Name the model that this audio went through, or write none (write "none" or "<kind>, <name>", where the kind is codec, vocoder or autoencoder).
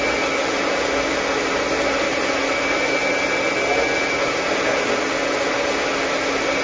none